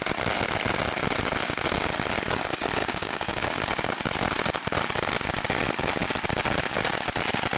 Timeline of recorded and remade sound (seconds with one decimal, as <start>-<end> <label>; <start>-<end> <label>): 0.0-2.8 recorded; 2.8-3.6 remade; 3.6-7.6 recorded